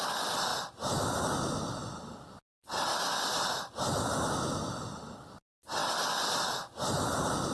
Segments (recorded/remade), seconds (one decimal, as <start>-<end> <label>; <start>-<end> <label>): 0.0-2.9 recorded; 2.9-3.7 remade; 3.7-7.5 recorded